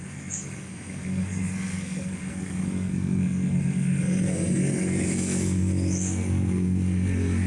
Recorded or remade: remade